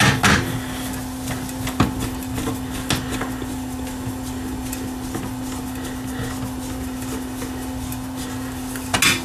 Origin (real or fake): real